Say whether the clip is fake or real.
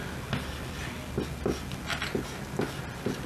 real